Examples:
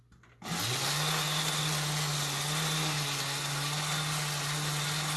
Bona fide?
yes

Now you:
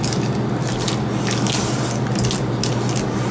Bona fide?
yes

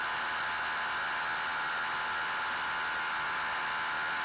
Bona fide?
yes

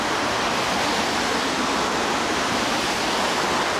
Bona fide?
yes